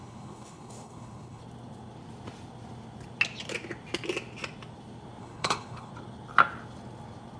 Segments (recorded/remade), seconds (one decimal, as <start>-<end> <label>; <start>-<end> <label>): 0.0-1.4 remade; 1.4-5.2 recorded; 5.2-5.9 remade; 5.9-7.4 recorded